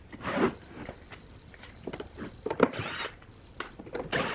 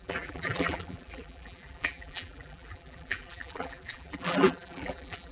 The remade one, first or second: second